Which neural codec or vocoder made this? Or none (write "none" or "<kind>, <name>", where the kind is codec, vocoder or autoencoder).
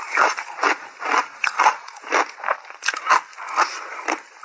none